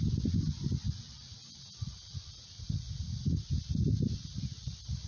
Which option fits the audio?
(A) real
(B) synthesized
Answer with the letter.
A